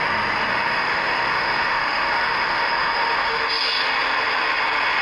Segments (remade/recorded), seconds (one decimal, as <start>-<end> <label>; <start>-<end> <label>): 0.0-0.5 recorded; 0.5-3.4 remade; 3.4-5.0 recorded

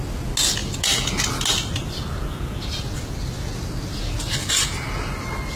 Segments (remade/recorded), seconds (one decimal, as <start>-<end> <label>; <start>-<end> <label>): 0.0-5.6 recorded

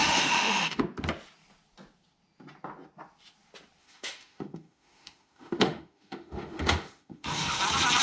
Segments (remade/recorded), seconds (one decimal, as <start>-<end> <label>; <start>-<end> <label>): 0.0-0.8 remade; 0.8-3.8 recorded; 3.8-7.6 remade; 7.6-8.0 recorded

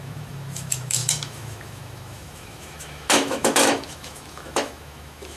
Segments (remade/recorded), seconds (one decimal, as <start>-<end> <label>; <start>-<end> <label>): 0.0-5.4 remade

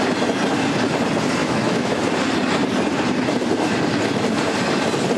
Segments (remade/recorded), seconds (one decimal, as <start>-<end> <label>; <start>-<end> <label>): 0.0-1.4 recorded; 1.4-2.0 remade; 2.0-5.2 recorded

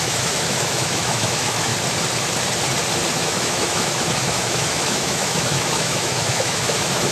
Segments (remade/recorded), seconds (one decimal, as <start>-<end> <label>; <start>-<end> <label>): 0.0-1.7 remade; 1.7-3.1 recorded; 3.1-7.1 remade

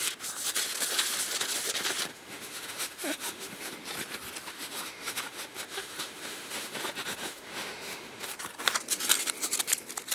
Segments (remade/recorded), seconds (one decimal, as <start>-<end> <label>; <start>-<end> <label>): 0.0-2.1 recorded; 2.1-3.7 remade; 3.7-4.5 recorded; 4.5-8.3 remade; 8.3-10.1 recorded